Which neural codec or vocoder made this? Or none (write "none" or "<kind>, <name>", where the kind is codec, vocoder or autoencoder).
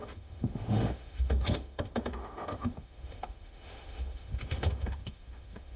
autoencoder, DAC-VAE